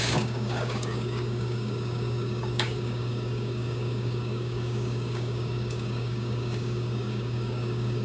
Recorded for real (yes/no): no